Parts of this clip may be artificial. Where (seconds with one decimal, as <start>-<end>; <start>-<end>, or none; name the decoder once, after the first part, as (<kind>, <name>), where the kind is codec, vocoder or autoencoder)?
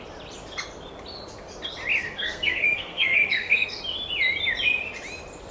2.0-3.8 (codec, SNAC)